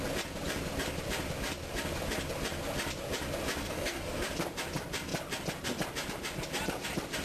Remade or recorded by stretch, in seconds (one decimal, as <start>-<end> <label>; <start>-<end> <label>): 0.0-3.6 recorded; 3.6-4.3 remade; 4.3-7.2 recorded